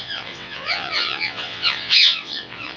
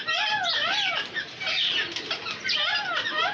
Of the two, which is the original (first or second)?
second